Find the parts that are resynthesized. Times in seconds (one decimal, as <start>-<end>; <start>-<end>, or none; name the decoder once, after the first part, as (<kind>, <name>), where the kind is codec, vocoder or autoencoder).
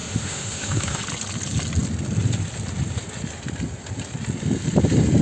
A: 0.0-1.0 (autoencoder, DAC-VAE)